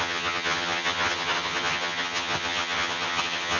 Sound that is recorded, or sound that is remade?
remade